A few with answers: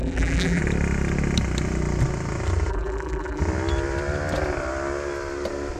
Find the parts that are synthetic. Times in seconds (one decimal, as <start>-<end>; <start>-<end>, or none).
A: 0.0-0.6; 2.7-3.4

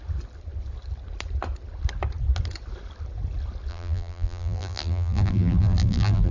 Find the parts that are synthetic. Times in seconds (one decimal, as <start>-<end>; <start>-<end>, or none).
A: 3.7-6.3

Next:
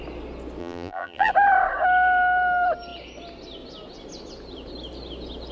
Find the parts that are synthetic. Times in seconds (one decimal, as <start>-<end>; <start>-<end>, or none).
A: 0.6-1.3